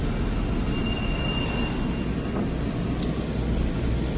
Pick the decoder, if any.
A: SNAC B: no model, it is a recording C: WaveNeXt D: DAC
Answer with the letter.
B